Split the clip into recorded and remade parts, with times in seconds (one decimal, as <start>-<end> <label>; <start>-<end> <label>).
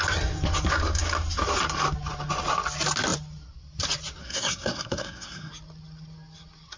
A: 0.0-4.2 recorded; 4.2-5.5 remade; 5.5-6.8 recorded